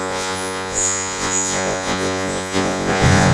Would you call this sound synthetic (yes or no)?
yes